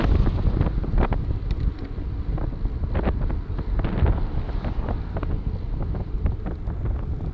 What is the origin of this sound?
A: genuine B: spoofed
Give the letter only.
A